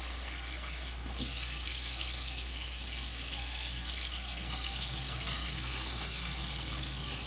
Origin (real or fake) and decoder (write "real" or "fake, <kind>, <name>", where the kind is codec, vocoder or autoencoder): fake, codec, SNAC